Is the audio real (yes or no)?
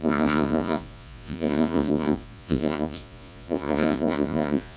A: no